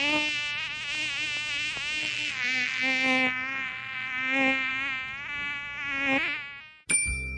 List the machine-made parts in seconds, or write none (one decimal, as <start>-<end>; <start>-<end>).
2.0-4.7